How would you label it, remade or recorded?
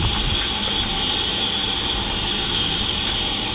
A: recorded